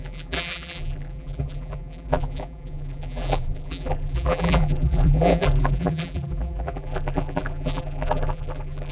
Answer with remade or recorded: remade